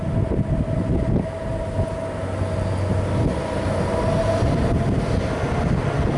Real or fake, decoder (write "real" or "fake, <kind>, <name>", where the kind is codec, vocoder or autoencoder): real